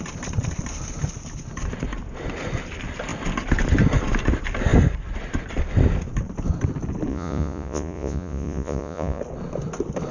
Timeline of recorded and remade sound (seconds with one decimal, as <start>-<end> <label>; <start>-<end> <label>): 0.0-7.1 recorded; 7.1-9.2 remade; 9.2-10.1 recorded